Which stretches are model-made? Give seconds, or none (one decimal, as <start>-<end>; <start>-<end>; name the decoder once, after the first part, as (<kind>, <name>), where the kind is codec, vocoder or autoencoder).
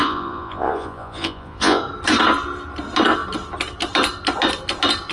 0.0-1.8 (vocoder, Vocos)